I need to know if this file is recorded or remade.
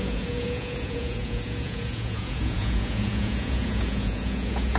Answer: remade